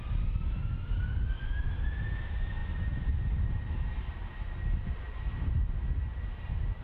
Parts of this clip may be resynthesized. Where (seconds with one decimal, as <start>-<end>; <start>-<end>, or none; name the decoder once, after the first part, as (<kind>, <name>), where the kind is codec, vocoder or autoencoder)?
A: none